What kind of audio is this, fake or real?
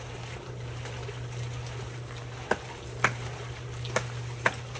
real